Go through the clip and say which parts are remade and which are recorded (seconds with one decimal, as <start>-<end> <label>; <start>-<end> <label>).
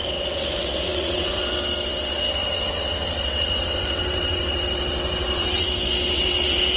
0.0-6.8 remade